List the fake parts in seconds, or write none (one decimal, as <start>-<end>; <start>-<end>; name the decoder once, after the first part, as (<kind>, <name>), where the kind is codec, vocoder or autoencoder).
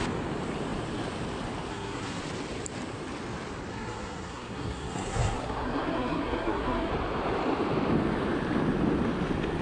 1.7-2.2 (codec, SNAC); 3.7-6.9